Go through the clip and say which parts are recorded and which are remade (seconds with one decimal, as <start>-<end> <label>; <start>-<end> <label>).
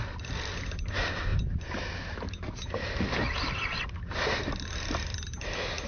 0.0-5.9 recorded